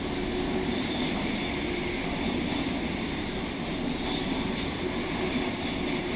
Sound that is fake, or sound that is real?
real